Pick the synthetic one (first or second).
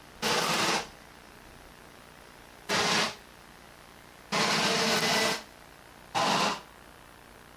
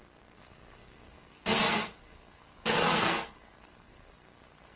second